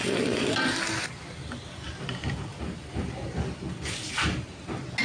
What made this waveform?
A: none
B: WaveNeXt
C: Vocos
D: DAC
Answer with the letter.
A